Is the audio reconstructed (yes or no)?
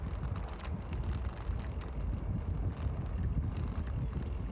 no